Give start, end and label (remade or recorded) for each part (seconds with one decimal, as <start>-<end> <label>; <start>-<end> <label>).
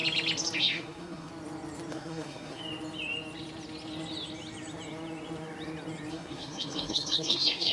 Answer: 0.0-0.6 recorded; 0.6-1.3 remade; 1.3-1.9 recorded; 1.9-2.6 remade; 2.6-6.1 recorded; 6.1-7.7 remade